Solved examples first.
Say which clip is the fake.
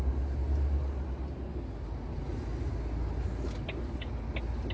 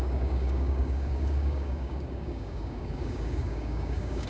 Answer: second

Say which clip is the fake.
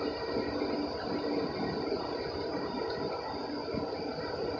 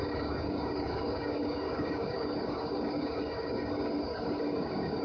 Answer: second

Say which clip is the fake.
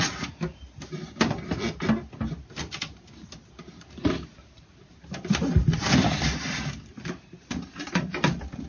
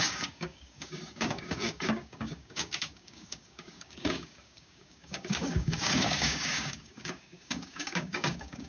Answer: second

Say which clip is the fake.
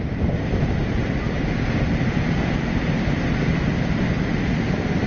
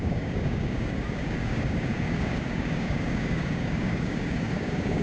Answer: second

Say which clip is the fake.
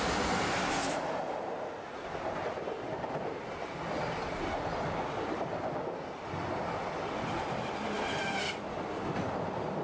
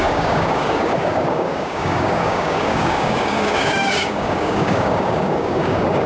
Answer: second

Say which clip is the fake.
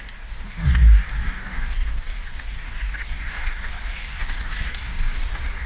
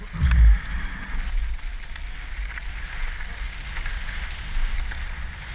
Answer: first